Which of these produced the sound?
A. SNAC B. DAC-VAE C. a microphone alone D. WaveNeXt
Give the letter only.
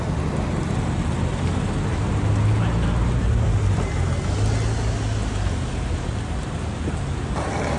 C